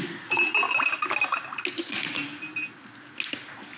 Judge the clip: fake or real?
real